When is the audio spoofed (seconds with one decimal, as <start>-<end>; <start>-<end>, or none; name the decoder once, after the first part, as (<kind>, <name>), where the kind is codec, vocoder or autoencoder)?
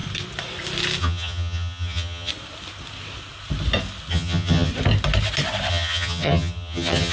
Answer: 1.0-2.3 (vocoder, HiFi-GAN); 4.1-4.7; 5.7-7.1